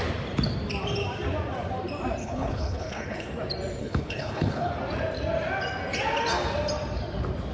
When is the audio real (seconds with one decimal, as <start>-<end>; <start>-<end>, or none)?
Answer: 0.0-2.2; 3.3-3.8; 4.7-7.5